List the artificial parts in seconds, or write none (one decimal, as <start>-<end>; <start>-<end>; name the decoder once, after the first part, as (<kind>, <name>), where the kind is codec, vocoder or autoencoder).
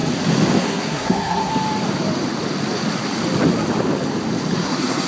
0.6-1.5 (codec, SNAC); 4.6-5.1